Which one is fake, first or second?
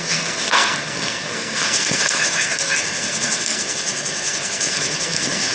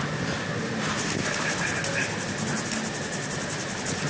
first